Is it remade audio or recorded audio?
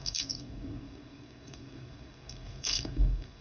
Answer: remade